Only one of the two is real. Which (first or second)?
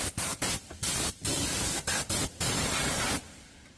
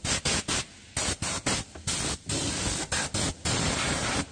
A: second